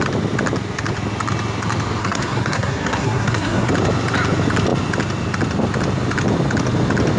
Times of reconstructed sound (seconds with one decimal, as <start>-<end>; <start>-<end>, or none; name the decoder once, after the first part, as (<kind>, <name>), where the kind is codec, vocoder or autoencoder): 2.0-3.7 (codec, SNAC)